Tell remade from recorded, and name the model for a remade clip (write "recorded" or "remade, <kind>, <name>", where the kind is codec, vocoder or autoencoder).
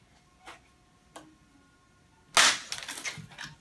recorded